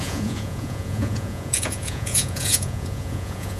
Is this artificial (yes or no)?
yes